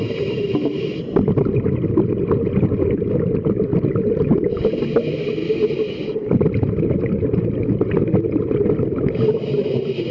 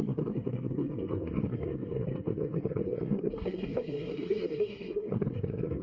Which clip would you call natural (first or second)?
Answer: first